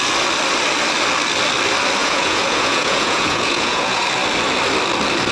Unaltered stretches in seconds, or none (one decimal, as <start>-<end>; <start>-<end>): 0.0-2.0; 4.0-5.3